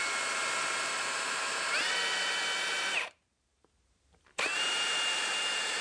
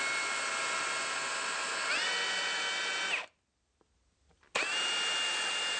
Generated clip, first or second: first